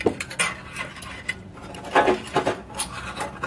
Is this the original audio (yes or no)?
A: yes